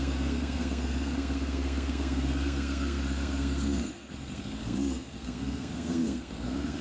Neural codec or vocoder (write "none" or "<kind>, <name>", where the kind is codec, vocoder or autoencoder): codec, SNAC